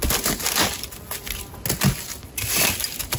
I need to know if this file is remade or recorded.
recorded